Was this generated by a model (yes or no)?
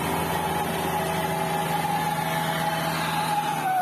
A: no